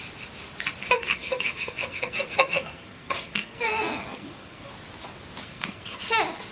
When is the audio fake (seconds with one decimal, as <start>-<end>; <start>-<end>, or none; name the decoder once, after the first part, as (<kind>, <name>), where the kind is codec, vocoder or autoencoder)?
0.8-4.7 (codec, SNAC); 5.4-6.0